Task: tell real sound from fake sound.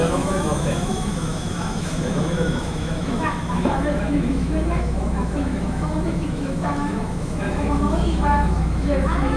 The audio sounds fake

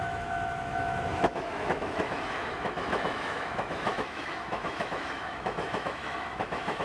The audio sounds fake